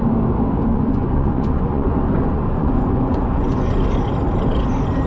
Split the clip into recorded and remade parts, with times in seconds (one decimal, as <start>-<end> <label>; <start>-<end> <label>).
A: 0.0-0.7 recorded; 0.7-3.8 remade; 3.8-5.1 recorded